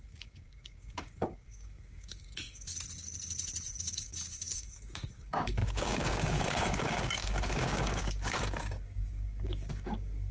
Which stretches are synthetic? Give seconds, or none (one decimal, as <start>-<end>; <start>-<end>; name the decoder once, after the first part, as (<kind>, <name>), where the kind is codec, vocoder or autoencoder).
0.0-2.7 (codec, DAC); 3.8-10.3